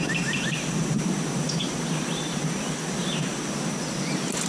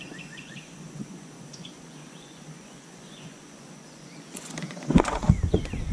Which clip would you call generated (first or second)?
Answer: second